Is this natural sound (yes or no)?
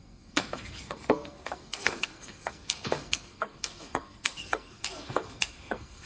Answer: no